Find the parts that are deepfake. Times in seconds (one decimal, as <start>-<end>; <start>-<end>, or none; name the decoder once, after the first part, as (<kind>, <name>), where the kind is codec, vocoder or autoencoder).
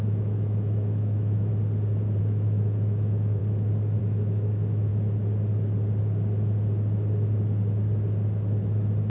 0.0-1.5 (autoencoder, DAC-VAE); 2.2-3.4; 4.0-4.9